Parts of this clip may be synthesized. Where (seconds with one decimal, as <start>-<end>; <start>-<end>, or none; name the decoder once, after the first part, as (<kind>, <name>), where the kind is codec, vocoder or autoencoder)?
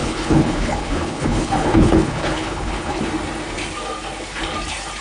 0.0-3.0 (codec, HILCodec)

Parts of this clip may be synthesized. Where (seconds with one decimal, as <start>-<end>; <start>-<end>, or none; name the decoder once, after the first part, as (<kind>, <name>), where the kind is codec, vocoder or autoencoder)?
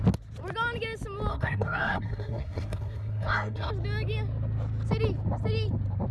1.3-3.7 (codec, SNAC)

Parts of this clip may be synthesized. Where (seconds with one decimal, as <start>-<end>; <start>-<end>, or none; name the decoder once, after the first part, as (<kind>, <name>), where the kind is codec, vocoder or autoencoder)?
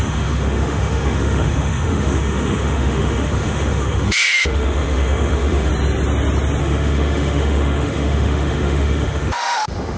0.0-5.7 (autoencoder, DAC-VAE); 6.6-10.0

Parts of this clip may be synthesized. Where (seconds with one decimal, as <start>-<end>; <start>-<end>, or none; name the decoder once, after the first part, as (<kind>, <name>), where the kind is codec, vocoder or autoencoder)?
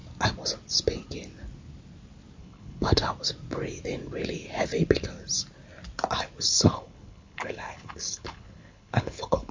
2.4-3.0 (codec, HILCodec); 6.4-9.5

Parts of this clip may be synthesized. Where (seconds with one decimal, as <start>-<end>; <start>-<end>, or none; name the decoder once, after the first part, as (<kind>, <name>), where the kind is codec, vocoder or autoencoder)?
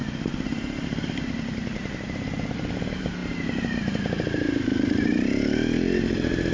0.0-2.7 (vocoder, BigVGAN v2)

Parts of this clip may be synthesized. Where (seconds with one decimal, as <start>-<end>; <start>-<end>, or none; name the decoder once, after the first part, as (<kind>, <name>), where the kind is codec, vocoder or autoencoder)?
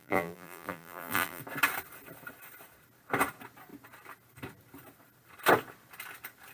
0.0-1.4 (vocoder, BigVGAN v2)